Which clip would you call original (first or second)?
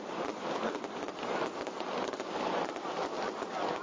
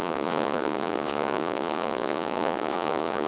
first